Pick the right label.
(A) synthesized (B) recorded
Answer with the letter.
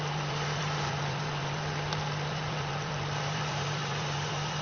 A